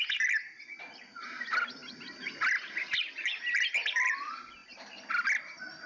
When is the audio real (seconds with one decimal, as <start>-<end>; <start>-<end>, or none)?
0.0-5.9